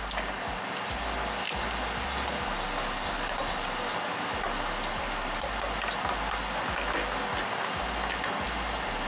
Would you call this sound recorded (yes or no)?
yes